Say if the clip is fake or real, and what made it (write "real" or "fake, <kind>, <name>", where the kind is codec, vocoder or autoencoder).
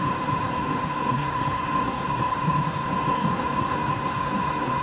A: fake, codec, SNAC